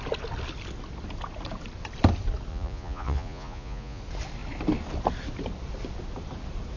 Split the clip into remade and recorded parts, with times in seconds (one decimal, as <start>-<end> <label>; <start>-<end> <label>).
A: 0.0-2.5 recorded; 2.5-4.0 remade; 4.0-6.8 recorded